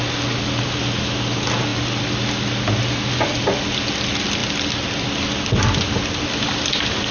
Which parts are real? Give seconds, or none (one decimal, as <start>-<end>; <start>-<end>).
0.0-7.1